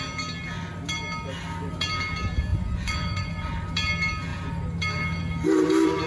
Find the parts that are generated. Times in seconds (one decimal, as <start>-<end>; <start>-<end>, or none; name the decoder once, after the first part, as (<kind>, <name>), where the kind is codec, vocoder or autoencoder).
2.5-3.5 (vocoder, Vocos)

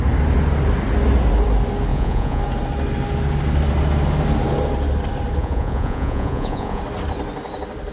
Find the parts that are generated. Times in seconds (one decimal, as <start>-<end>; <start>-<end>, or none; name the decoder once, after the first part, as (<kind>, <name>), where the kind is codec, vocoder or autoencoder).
1.9-2.4 (vocoder, Vocos); 5.4-6.8

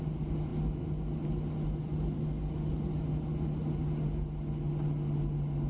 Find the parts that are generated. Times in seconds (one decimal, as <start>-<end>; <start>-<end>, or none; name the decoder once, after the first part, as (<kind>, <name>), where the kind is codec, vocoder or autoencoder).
none

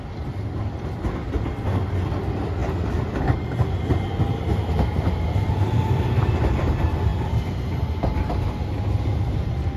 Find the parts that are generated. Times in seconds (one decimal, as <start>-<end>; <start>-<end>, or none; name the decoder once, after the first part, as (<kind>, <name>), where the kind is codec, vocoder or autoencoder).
none

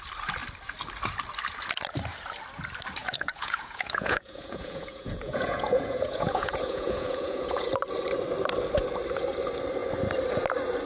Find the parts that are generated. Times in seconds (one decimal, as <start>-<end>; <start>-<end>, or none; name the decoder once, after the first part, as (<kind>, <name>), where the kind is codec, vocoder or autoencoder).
3.0-7.7 (vocoder, Vocos)

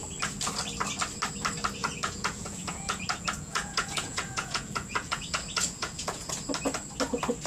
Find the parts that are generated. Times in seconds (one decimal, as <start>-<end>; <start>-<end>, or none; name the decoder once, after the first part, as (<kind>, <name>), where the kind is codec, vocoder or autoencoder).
1.8-6.3 (vocoder, Vocos)

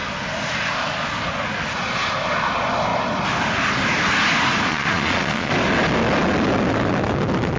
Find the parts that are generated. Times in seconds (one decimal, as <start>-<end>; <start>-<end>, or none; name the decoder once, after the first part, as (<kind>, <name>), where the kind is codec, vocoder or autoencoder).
4.7-5.5 (vocoder, Vocos)

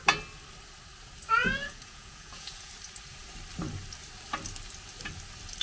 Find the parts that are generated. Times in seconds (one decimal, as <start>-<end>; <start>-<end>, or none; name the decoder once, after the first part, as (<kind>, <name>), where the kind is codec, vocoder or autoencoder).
1.4-2.7 (vocoder, Vocos)